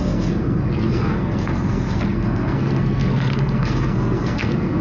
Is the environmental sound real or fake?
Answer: fake